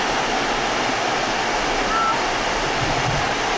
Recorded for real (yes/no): yes